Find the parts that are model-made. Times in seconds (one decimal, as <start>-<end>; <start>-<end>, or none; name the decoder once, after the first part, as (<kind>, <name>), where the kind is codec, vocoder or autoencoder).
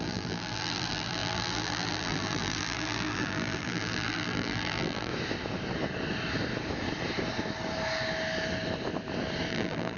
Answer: 0.0-5.1 (vocoder, BigVGAN v2); 9.5-10.0